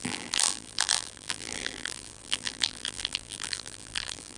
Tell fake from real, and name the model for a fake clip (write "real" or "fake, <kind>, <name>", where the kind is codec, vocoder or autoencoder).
fake, vocoder, BigVGAN v2